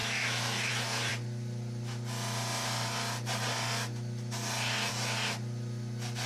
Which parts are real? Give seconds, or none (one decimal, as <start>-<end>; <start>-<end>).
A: 0.7-6.3